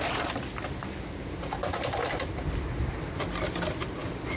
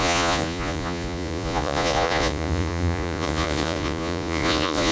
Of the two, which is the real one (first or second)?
first